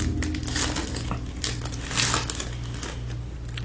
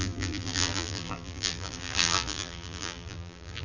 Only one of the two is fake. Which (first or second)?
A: second